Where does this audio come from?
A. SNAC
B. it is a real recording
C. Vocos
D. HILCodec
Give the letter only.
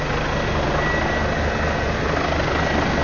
B